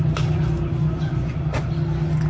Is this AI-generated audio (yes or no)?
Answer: no